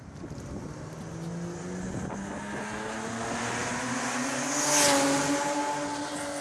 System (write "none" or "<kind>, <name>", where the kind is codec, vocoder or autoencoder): none